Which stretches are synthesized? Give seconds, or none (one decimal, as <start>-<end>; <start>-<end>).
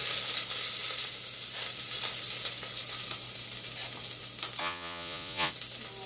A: 4.6-5.5